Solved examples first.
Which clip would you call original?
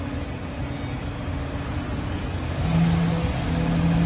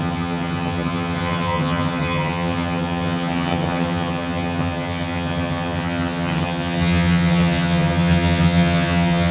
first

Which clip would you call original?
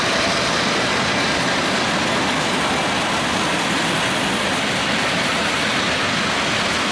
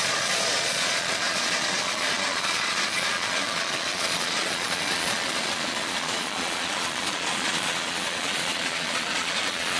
first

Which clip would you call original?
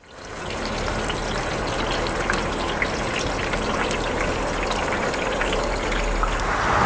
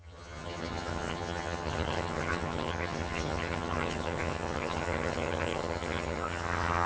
first